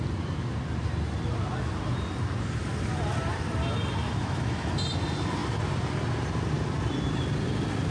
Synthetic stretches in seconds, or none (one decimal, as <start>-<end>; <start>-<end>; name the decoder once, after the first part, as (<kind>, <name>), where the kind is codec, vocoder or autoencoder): 4.0-4.7 (autoencoder, DAC-VAE)